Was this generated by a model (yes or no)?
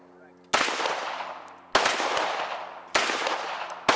no